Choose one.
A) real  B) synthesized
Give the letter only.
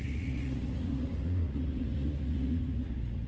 B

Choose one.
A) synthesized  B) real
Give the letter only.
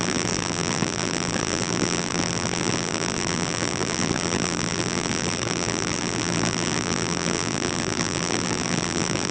A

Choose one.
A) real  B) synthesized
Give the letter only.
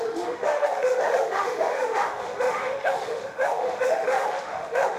B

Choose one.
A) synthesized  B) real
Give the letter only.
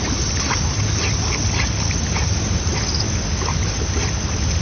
B